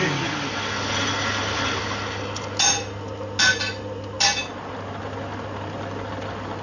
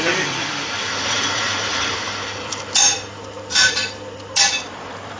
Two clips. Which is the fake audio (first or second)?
second